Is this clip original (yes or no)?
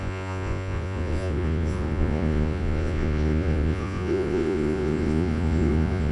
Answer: no